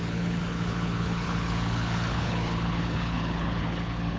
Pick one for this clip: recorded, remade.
remade